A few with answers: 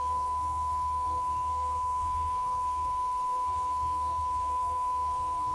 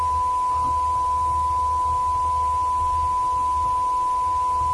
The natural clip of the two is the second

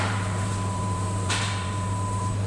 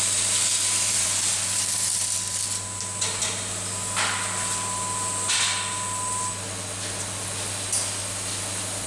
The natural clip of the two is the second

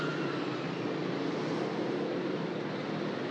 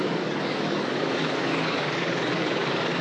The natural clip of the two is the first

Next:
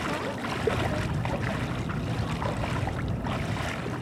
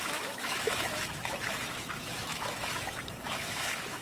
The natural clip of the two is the first